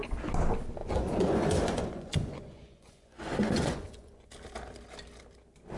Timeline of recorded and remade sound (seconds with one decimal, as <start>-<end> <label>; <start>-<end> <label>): 0.0-0.8 recorded; 0.8-4.3 remade; 4.3-5.8 recorded